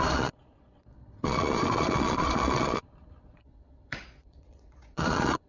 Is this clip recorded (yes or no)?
no